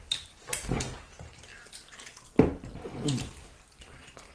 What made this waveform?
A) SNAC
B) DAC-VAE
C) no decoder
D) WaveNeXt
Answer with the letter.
C